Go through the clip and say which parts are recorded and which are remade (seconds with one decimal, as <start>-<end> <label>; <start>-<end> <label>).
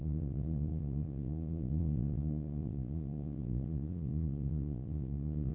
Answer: 0.0-5.5 remade